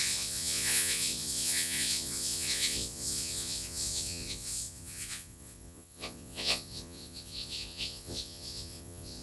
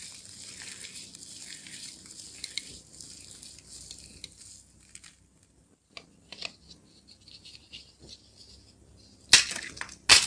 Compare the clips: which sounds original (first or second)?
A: second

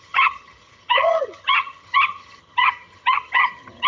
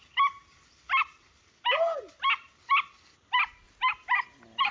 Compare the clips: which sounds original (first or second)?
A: second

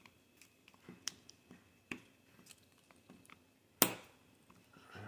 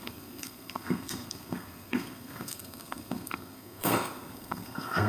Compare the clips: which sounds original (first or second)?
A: first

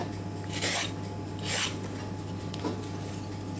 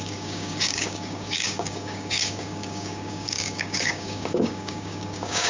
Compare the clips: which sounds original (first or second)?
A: first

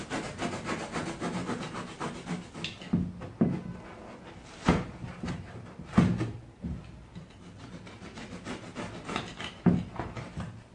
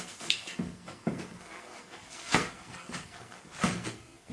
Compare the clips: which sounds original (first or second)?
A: first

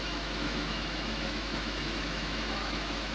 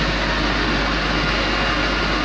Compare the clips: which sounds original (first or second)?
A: second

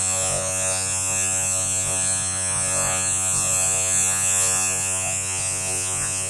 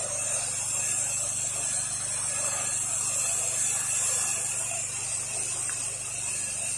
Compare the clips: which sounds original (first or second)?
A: second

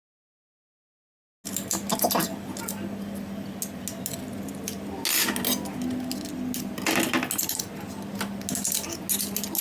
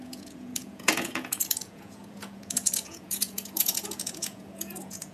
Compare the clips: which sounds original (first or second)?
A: first